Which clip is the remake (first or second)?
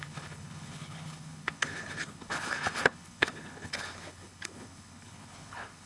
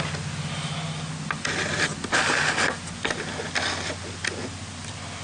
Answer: first